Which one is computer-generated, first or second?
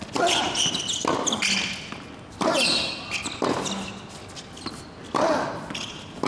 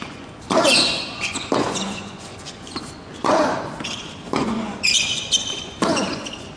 second